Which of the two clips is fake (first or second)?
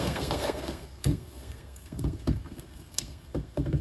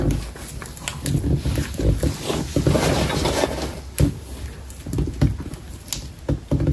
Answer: first